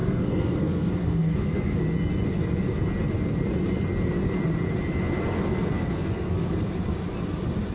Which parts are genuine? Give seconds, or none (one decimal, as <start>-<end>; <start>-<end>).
1.8-5.8; 6.5-7.7